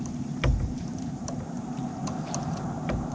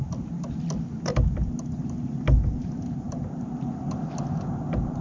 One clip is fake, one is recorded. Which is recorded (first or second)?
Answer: second